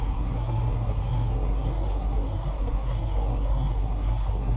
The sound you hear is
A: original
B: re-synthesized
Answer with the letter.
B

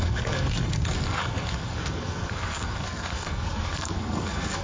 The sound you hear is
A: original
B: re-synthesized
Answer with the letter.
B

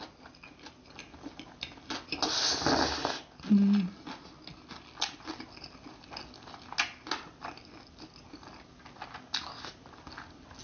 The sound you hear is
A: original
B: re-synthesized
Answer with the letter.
A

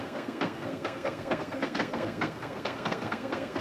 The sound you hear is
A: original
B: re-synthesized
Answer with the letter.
B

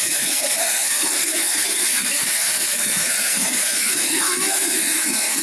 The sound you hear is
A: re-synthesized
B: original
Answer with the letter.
A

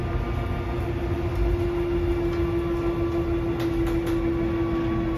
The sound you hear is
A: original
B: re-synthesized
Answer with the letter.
A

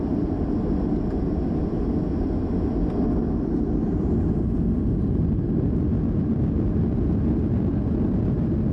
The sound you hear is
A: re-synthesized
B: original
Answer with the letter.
B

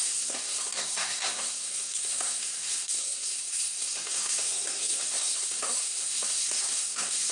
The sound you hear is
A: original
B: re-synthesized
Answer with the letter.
B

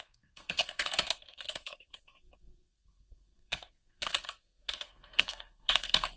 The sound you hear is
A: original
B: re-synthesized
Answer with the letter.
B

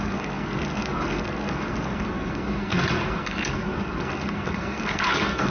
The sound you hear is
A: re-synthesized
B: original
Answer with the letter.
A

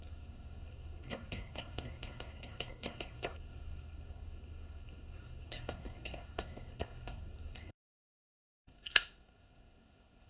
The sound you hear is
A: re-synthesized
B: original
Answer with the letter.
A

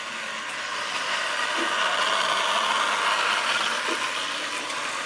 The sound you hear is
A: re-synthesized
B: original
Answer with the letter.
B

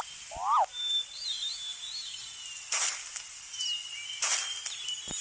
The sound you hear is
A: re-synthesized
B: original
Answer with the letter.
B